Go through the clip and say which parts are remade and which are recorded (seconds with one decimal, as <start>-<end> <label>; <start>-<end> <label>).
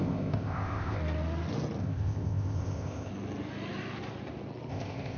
0.0-1.0 remade; 1.0-1.8 recorded; 1.8-3.1 remade; 3.1-4.7 recorded; 4.7-5.2 remade